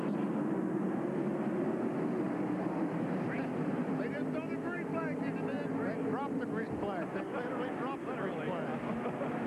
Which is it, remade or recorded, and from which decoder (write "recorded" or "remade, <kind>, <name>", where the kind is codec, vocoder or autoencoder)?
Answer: recorded